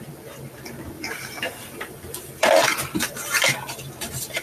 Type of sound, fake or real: fake